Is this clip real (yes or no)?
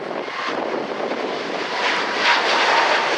yes